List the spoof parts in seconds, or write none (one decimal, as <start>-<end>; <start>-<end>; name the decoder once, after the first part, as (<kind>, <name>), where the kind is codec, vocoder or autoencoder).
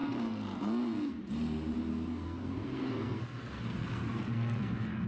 0.0-1.2 (codec, SNAC); 1.9-5.1